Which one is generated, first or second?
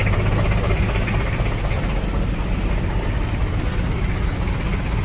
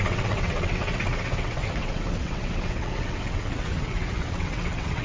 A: second